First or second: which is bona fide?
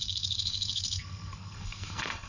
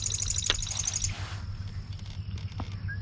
second